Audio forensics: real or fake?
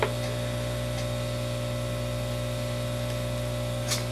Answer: real